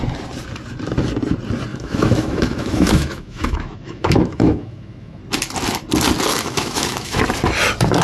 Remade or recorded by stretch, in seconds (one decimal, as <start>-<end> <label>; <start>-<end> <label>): 0.0-1.7 recorded; 1.7-5.2 remade; 5.2-6.3 recorded; 6.3-7.2 remade; 7.2-8.0 recorded

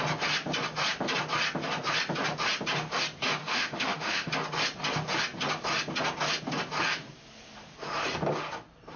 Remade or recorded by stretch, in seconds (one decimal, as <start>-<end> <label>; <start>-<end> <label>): 0.0-3.4 recorded; 3.4-4.3 remade; 4.3-9.0 recorded

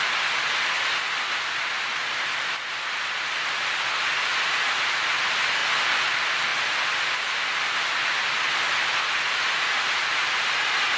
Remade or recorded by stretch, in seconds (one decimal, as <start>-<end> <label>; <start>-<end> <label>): 0.0-11.0 recorded

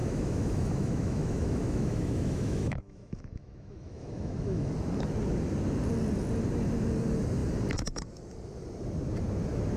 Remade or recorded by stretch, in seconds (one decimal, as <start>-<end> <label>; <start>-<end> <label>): 0.0-4.7 remade; 4.7-9.8 recorded

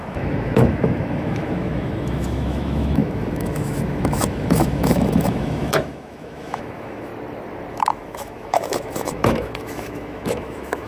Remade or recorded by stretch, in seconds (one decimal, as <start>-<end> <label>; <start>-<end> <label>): 0.0-7.1 remade; 7.1-7.7 recorded; 7.7-10.9 remade

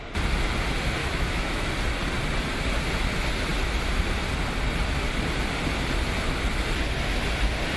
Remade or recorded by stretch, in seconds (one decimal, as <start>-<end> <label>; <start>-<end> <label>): 0.0-1.0 recorded; 1.0-1.7 remade; 1.7-7.8 recorded